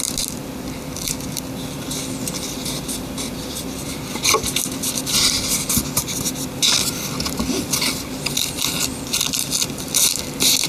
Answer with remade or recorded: recorded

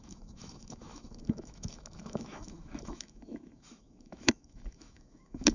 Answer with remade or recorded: remade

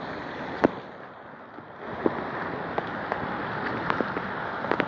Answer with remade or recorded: recorded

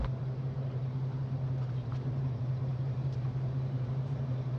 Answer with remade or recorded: remade